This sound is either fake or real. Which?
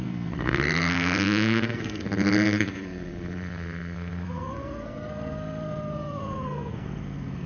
fake